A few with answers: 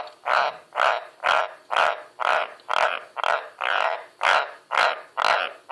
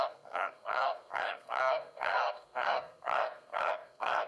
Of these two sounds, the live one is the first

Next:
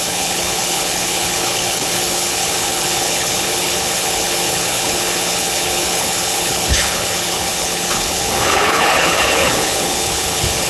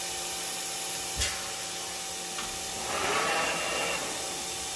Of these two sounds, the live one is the second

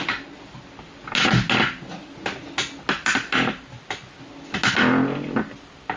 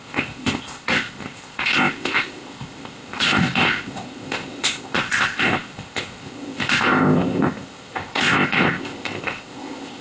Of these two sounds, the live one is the first